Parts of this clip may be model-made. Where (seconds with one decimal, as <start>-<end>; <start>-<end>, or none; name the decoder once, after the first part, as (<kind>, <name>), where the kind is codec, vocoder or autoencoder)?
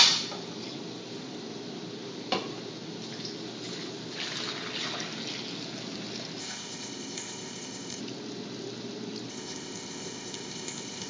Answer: 6.4-8.0 (codec, ZipCodec); 9.3-11.1